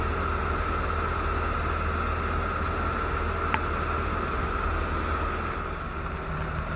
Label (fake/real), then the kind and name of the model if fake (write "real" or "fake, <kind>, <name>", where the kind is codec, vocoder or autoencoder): real